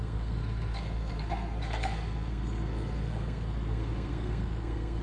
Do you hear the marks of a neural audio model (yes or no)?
yes